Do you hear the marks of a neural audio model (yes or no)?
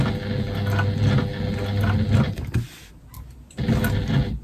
no